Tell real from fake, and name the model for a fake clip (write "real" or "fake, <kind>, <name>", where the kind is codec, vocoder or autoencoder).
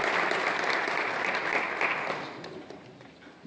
real